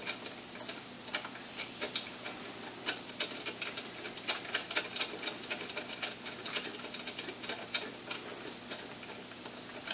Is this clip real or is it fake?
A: real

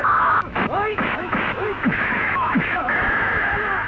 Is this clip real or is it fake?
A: fake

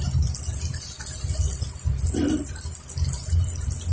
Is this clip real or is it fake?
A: real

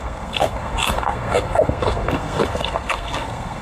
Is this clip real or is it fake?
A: fake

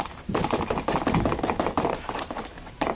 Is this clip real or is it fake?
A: real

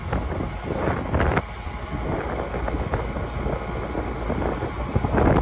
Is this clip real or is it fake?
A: real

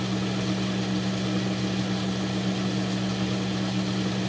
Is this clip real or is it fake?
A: real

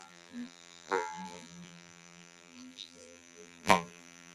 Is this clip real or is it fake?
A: fake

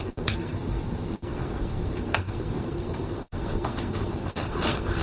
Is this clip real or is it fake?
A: fake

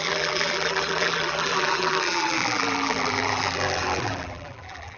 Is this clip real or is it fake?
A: fake